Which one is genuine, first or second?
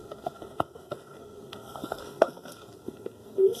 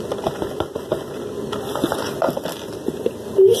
second